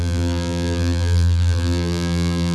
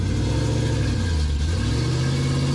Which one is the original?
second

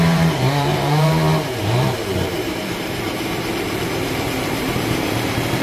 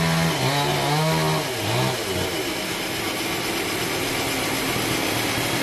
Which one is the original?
second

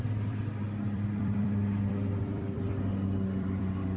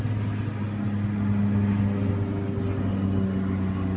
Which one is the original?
second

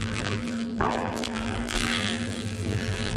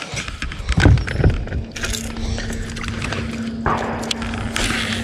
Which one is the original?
second